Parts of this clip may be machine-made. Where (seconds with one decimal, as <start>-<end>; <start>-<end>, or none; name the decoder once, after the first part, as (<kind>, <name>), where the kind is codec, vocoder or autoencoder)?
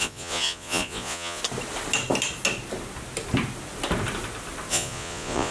0.0-1.4 (vocoder, Vocos); 4.7-5.5